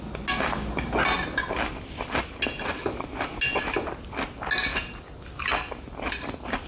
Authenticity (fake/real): real